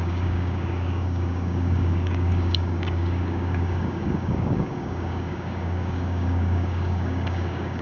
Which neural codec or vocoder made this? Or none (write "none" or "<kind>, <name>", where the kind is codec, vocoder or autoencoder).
codec, DAC